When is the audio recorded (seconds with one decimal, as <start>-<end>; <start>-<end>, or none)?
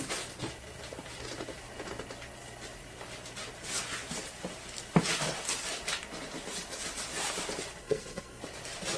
0.0-7.8; 8.4-9.0